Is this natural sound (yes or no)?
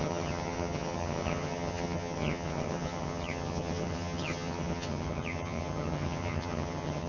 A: no